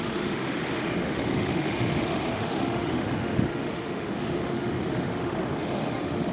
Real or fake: fake